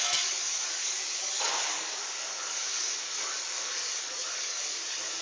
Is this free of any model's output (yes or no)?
no